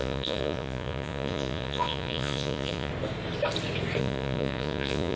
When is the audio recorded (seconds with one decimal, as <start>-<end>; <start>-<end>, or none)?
2.9-4.0